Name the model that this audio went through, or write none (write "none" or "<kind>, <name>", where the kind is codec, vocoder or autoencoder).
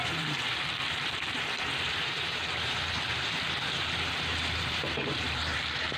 vocoder, BigVGAN v2